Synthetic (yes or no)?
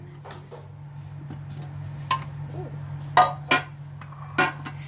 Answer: no